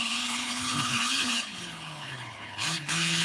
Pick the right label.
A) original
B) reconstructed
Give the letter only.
B